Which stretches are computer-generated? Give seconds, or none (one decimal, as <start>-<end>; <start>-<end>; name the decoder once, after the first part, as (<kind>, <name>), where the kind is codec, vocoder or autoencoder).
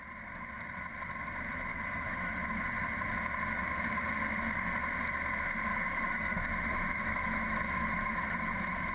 1.7-2.6 (autoencoder, DAC-VAE); 5.7-8.9